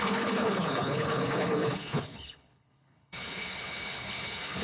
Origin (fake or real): fake